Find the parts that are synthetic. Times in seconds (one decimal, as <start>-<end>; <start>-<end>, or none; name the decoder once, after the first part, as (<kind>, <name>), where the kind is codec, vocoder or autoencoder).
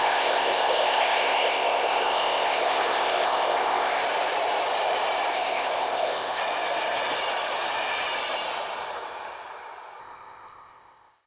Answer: 0.0-4.0 (codec, ZipCodec); 5.3-6.4; 10.0-11.3